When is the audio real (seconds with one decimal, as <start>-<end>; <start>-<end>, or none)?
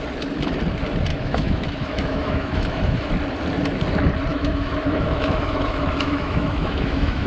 0.0-1.1; 3.1-4.3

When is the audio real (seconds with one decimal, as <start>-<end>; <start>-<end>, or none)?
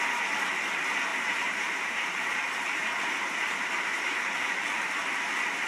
0.0-1.1; 4.5-5.7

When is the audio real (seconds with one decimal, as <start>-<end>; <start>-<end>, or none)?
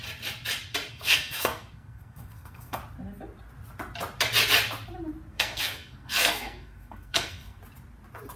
0.0-0.9; 2.8-5.3; 7.6-8.4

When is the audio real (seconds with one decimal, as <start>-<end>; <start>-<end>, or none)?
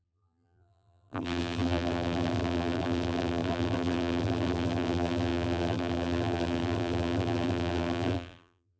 none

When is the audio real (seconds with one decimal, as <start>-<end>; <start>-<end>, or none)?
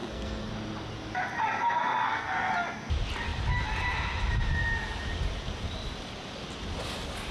0.5-1.6; 2.5-7.3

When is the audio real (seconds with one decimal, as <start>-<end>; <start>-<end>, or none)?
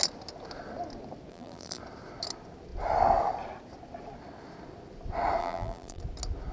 0.0-1.3; 1.8-5.4; 6.0-6.5